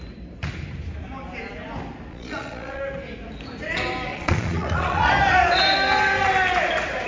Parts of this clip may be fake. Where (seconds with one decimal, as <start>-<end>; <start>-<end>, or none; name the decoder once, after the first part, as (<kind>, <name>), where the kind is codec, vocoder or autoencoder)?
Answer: 2.1-2.8 (vocoder, Vocos); 4.1-5.1